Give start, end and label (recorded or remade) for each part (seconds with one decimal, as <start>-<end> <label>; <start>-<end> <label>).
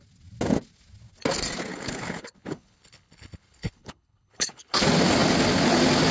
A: 0.0-1.7 recorded; 1.7-4.8 remade; 4.8-6.1 recorded